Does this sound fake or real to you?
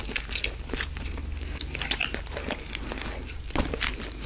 real